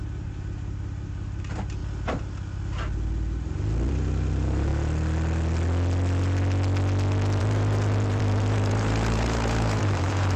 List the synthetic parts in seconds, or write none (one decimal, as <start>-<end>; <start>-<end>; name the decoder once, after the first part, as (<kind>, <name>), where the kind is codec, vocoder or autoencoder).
0.0-1.8 (vocoder, BigVGAN v2); 3.9-4.7; 7.4-10.4